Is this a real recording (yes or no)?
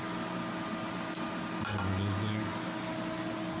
yes